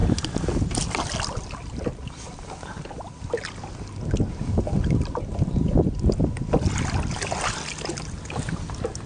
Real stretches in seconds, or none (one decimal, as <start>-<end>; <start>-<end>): 0.0-9.1